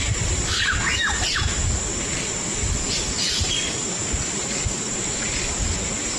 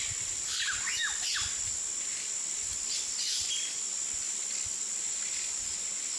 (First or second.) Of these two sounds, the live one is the second